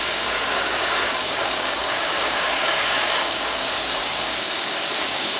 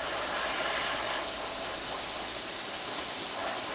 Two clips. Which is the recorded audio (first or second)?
second